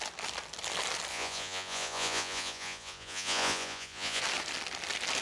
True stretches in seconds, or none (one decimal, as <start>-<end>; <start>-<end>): 0.0-1.1; 4.2-5.2